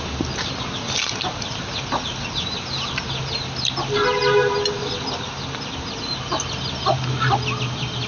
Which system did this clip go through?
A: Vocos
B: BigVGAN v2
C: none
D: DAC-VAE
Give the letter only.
C